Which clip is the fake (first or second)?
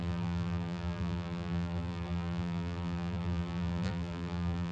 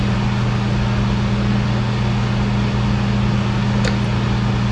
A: first